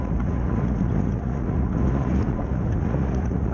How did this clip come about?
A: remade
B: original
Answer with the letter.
A